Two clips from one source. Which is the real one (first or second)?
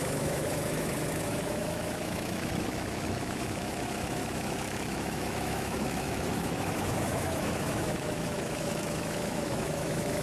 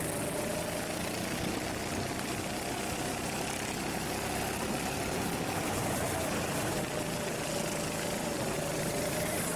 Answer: second